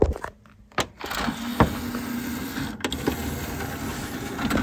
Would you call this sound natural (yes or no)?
yes